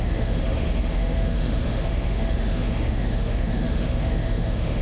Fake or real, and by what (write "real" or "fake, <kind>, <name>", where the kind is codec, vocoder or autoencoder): fake, autoencoder, DAC-VAE